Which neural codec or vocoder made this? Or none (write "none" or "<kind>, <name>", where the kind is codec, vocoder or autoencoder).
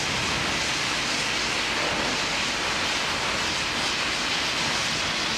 none